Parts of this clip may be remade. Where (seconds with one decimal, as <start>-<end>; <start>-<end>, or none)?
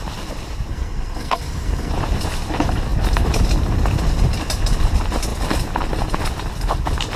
0.7-1.9